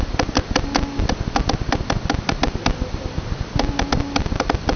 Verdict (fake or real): real